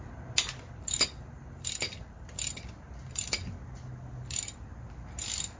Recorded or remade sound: recorded